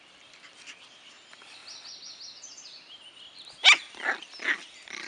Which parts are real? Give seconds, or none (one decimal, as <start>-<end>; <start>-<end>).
0.0-5.1